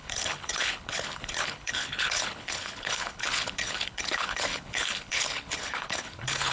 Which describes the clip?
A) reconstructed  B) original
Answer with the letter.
A